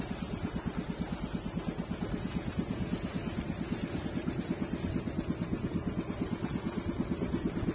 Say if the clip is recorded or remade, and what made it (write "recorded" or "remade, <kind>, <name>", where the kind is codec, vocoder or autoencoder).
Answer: recorded